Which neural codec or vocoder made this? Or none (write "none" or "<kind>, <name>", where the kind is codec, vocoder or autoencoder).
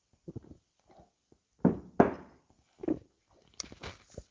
none